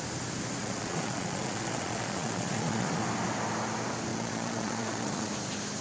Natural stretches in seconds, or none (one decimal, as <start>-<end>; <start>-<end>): 0.0-0.6; 3.0-4.1; 5.3-5.8